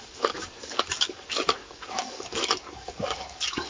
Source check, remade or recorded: remade